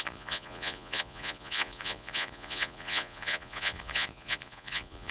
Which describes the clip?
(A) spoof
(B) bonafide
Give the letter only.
A